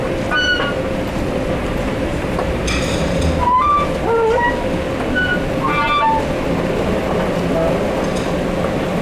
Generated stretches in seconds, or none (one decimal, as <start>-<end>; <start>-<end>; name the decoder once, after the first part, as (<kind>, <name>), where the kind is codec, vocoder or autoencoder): 1.6-3.2 (vocoder, BigVGAN v2)